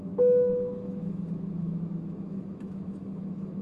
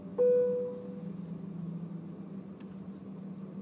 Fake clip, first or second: first